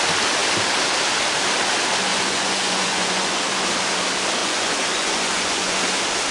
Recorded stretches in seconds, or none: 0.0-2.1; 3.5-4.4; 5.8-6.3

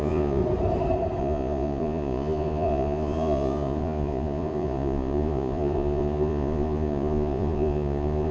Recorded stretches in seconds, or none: 0.4-1.2

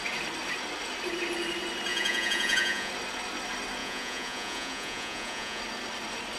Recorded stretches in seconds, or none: 0.0-1.9; 2.9-3.8; 5.6-6.4

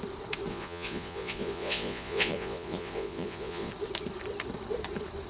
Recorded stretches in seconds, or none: 0.0-0.5; 3.7-5.3

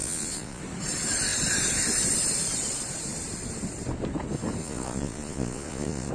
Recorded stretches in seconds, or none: 0.6-4.6